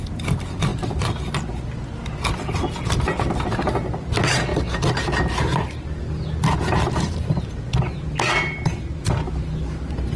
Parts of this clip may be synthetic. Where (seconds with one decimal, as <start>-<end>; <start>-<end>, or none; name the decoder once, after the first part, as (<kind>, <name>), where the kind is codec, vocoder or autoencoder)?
none